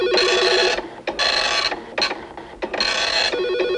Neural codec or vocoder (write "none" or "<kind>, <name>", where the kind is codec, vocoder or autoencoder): none